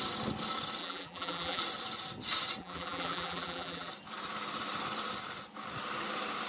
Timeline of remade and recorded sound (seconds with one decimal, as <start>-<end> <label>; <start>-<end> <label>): 0.0-0.8 recorded; 0.8-1.6 remade; 1.6-2.6 recorded; 2.6-3.9 remade; 3.9-6.5 recorded